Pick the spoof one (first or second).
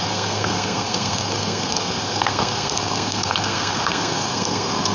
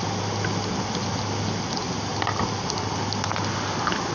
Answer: first